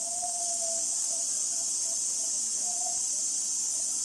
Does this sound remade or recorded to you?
recorded